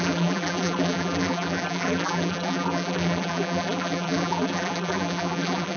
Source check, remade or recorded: remade